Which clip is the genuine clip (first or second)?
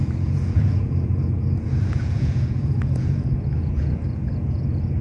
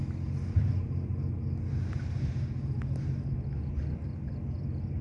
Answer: second